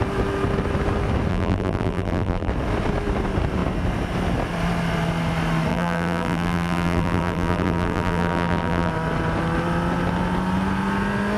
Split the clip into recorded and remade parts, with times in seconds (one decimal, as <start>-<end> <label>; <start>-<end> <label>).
0.0-1.3 recorded; 1.3-2.5 remade; 2.5-5.7 recorded; 5.7-8.9 remade; 8.9-11.4 recorded